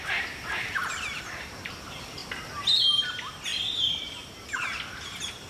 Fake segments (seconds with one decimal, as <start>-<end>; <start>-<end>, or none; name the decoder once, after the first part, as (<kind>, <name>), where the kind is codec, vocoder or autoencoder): 0.8-1.7 (vocoder, BigVGAN v2); 3.5-4.2